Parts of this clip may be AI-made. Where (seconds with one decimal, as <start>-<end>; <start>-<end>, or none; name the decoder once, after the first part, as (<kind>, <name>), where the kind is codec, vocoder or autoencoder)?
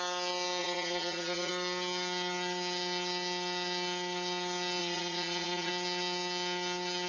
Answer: 0.6-1.5 (vocoder, Vocos); 4.8-5.7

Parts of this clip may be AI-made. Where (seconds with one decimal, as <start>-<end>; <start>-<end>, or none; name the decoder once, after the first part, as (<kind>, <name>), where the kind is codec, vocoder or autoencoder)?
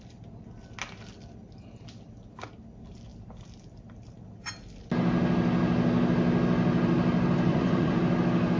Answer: 7.5-8.0 (vocoder, Vocos)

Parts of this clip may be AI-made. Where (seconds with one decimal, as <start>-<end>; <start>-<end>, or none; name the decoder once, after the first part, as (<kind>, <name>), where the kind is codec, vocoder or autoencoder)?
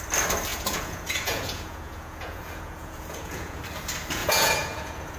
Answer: 0.5-3.6 (vocoder, Vocos); 4.2-5.2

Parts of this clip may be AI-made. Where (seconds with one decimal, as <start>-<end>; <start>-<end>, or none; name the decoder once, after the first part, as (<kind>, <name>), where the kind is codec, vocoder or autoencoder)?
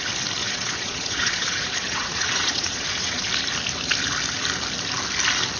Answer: 0.4-3.3 (vocoder, Vocos)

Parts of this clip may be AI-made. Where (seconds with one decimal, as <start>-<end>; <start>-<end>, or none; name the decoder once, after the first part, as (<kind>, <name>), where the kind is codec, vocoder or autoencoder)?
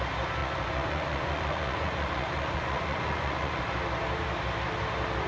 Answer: 0.4-3.6 (vocoder, Vocos)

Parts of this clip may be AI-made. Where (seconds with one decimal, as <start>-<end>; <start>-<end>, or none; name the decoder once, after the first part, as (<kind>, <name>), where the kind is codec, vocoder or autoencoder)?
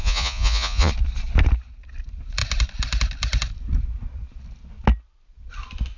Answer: 0.0-0.9 (vocoder, Vocos)